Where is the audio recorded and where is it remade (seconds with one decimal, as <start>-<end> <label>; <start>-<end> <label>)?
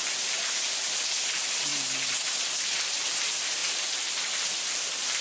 0.0-5.2 remade